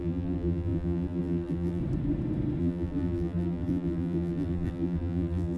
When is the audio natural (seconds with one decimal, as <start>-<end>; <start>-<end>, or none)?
1.8-2.6